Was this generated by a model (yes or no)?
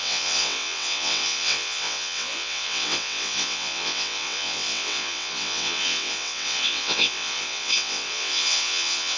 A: yes